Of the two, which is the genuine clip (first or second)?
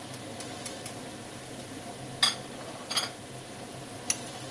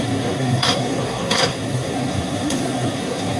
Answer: first